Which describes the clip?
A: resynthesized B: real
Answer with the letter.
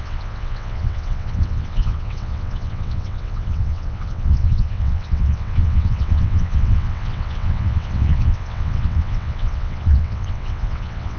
A